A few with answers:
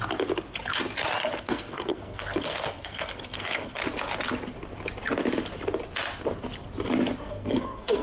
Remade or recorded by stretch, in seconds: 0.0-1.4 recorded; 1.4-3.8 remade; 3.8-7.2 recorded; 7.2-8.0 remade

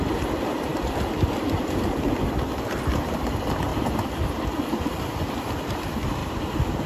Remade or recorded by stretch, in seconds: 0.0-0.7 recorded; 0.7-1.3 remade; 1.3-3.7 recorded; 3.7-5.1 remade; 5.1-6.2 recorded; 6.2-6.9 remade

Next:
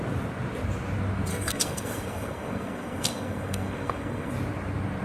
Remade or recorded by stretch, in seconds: 0.0-1.3 recorded; 1.3-4.3 remade; 4.3-5.0 recorded